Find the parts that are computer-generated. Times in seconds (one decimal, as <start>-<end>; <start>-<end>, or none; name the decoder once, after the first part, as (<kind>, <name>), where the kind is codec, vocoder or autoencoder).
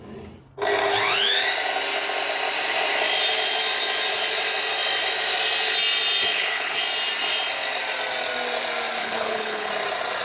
6.3-6.8 (codec, HILCodec); 9.0-9.7